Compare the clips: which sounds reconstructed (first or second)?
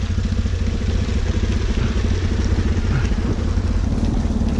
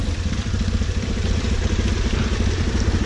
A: second